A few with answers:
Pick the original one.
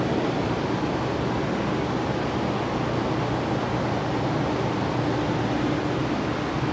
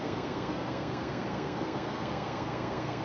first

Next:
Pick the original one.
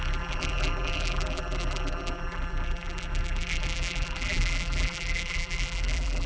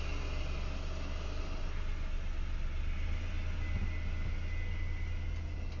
second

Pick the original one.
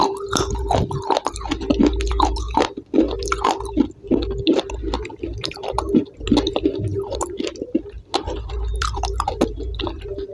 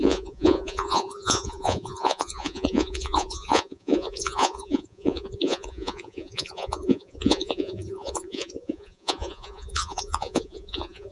first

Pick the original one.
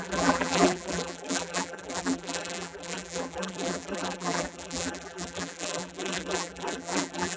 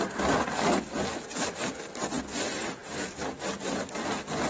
second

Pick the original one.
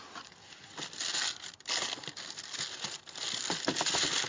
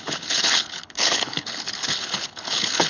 first